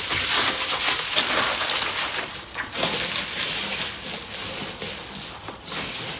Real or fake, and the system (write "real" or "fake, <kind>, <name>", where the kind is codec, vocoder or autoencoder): real